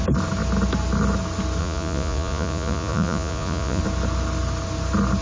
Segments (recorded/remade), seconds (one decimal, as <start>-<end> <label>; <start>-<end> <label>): 0.0-1.6 recorded; 1.6-3.8 remade; 3.8-5.2 recorded